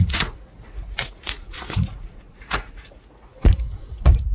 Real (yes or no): no